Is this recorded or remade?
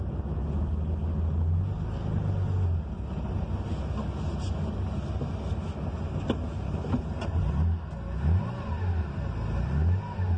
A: recorded